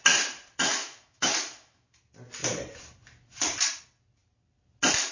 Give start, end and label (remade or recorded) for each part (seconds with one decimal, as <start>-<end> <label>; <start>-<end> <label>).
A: 0.0-0.8 recorded; 0.8-2.0 remade; 2.0-5.1 recorded